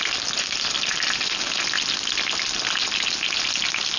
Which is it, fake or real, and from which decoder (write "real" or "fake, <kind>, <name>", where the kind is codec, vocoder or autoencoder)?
real